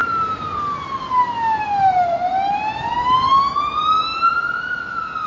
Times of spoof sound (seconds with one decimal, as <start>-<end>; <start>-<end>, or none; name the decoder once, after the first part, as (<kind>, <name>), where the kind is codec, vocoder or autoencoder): none